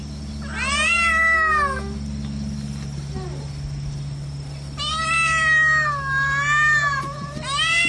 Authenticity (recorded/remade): recorded